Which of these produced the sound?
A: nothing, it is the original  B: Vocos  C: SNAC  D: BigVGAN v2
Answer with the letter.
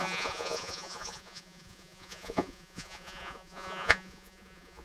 B